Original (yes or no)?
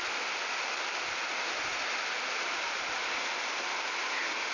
yes